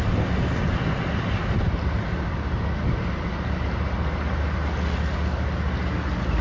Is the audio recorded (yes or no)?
yes